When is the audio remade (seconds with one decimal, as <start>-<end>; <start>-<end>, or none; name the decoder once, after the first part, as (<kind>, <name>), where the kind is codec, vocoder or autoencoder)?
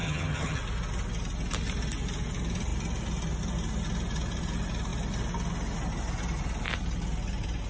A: 0.0-0.6 (vocoder, HiFi-GAN)